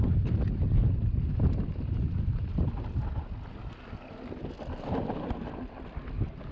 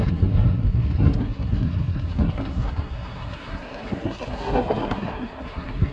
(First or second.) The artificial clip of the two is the second